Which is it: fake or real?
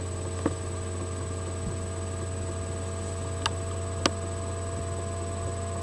real